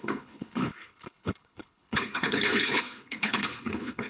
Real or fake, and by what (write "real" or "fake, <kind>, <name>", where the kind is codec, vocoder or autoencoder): fake, codec, HILCodec